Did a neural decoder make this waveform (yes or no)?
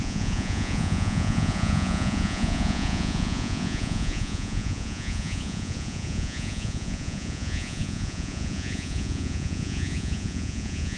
yes